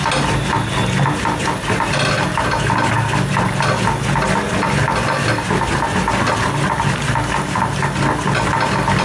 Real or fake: real